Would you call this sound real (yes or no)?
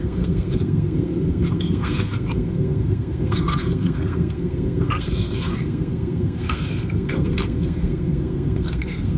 no